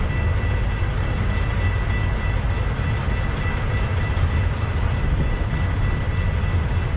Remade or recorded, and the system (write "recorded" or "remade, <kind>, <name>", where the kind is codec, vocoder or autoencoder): recorded